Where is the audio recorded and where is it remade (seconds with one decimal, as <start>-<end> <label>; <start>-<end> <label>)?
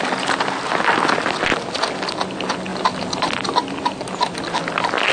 0.0-5.1 recorded